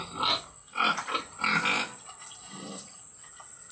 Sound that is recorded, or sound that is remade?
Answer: recorded